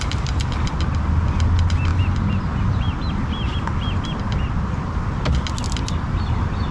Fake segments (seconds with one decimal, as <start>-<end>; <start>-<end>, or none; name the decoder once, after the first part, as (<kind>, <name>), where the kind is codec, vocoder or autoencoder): none